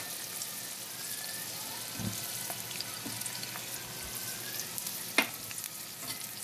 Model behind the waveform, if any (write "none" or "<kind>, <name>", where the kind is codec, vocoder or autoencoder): none